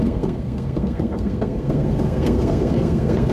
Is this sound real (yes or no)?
no